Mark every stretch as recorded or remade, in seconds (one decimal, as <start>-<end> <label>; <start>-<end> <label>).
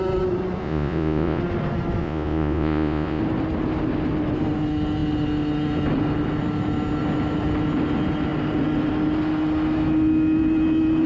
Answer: 0.0-0.6 recorded; 0.6-1.4 remade; 1.4-2.0 recorded; 2.0-3.2 remade; 3.2-11.1 recorded